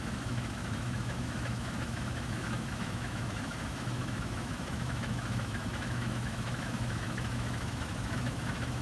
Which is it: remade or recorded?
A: remade